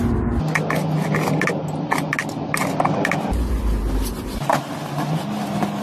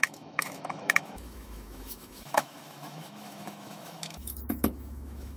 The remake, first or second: second